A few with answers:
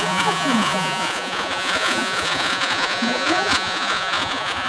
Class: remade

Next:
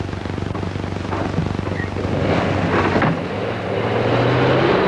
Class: recorded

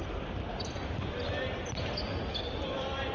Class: remade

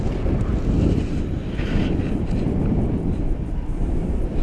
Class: recorded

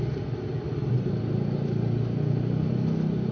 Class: recorded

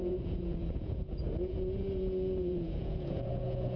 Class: remade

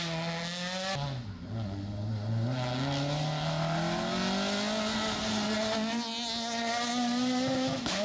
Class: recorded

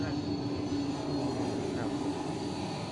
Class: recorded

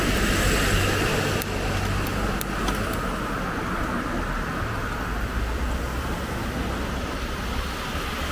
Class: recorded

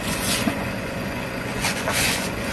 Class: remade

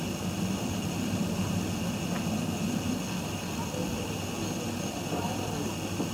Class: recorded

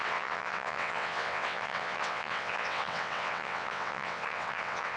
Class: remade